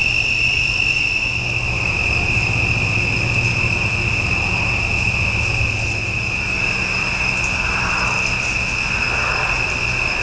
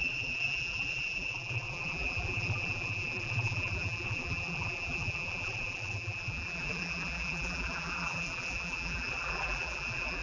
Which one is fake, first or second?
second